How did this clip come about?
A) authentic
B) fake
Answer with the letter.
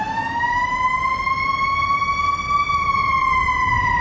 A